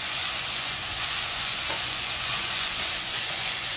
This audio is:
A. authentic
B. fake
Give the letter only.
B